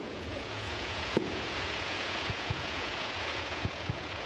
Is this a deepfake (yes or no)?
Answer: yes